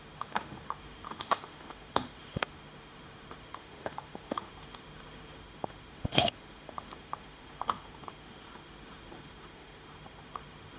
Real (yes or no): no